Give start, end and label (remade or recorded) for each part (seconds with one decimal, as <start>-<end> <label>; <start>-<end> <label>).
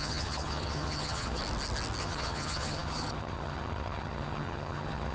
0.0-1.4 remade; 1.4-2.0 recorded; 2.0-5.1 remade